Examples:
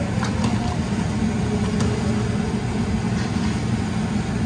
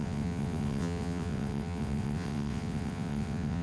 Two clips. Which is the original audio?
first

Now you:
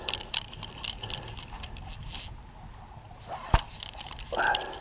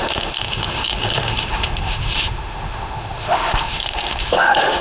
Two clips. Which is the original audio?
first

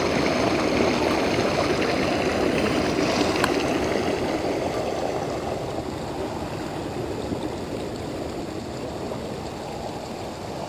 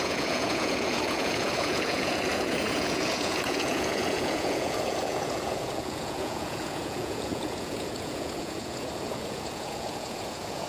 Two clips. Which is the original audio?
first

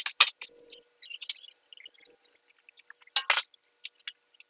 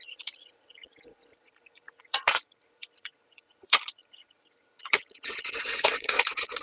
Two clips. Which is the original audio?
first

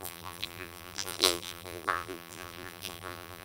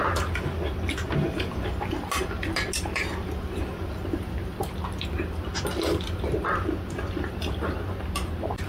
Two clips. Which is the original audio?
second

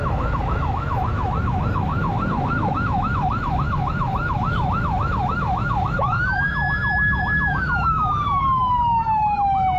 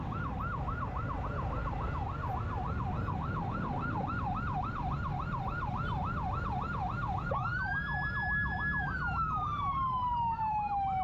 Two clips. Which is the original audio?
second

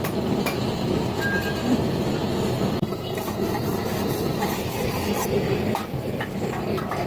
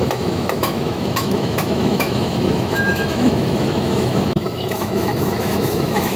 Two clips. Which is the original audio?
first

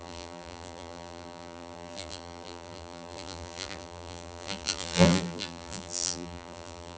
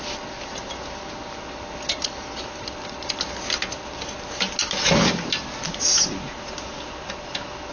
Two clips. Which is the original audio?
second